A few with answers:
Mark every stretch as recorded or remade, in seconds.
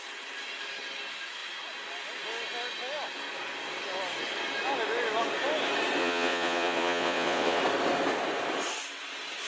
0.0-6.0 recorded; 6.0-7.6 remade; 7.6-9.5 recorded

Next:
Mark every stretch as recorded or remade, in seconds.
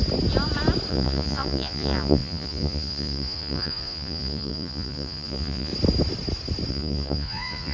0.0-0.9 recorded; 0.9-5.7 remade; 5.7-6.7 recorded; 6.7-7.7 remade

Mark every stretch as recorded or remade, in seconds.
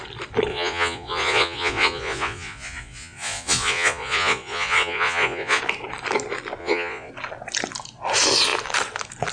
0.0-0.5 recorded; 0.5-5.6 remade; 5.6-6.6 recorded; 6.6-7.1 remade; 7.1-9.3 recorded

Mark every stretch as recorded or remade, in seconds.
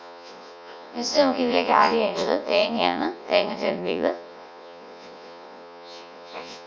0.0-6.7 remade